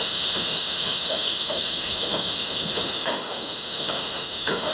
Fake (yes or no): yes